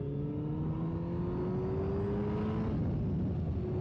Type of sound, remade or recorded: recorded